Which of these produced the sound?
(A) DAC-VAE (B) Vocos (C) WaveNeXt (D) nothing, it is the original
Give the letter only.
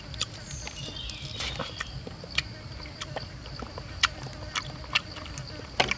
D